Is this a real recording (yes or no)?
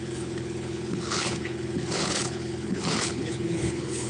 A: no